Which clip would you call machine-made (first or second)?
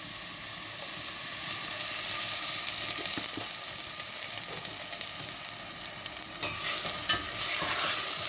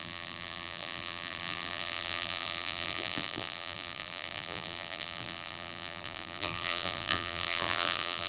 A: second